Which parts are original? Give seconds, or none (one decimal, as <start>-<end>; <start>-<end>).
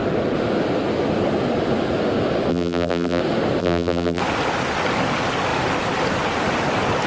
0.0-2.5; 3.2-3.6; 4.2-7.1